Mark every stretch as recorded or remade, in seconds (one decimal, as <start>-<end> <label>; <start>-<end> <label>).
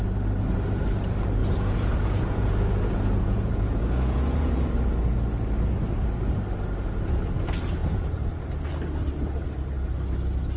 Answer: 0.0-1.4 recorded; 1.4-4.7 remade; 4.7-7.8 recorded; 7.8-8.3 remade; 8.3-10.6 recorded